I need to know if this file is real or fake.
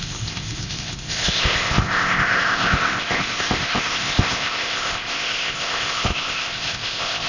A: fake